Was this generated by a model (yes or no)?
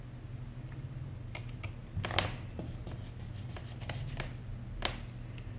no